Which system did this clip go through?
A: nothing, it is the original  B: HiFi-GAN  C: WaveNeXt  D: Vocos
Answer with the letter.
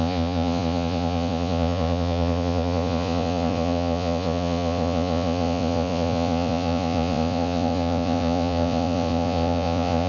D